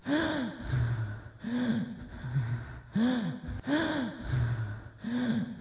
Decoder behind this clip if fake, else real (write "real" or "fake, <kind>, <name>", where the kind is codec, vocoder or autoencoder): real